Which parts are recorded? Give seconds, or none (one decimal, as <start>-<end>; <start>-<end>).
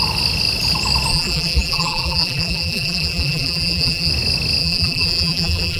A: 0.0-1.1; 4.1-4.6